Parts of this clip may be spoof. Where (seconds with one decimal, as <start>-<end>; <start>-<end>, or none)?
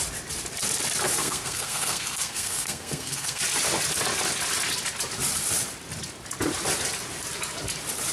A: 1.2-3.4